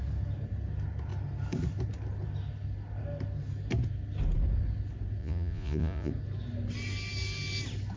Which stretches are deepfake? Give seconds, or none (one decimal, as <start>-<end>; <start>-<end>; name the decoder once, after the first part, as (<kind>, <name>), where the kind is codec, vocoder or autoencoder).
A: 5.2-6.1 (vocoder, Vocos)